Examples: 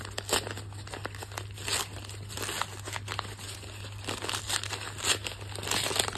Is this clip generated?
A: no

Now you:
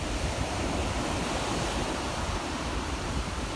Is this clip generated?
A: yes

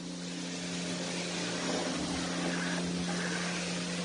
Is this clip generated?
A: no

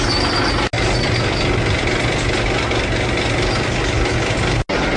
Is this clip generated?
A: no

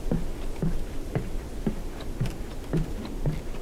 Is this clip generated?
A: no